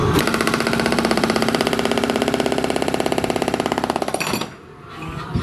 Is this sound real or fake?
fake